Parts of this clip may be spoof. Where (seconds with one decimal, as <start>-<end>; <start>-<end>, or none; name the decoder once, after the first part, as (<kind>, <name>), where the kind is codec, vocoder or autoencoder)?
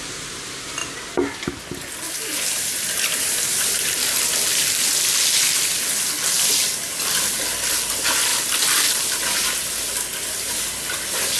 none